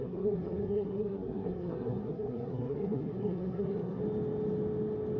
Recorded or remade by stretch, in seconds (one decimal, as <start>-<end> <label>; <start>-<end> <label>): 0.0-4.0 remade; 4.0-5.2 recorded